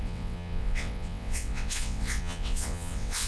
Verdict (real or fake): fake